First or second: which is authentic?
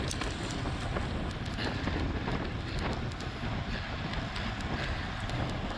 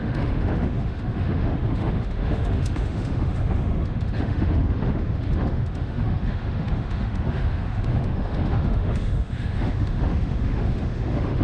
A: first